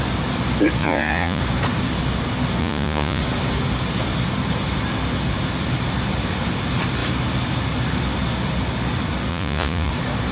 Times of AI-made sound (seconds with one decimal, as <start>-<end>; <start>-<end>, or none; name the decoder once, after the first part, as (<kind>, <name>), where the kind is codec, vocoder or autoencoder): 0.8-1.4 (vocoder, Vocos); 2.6-3.2; 9.3-9.9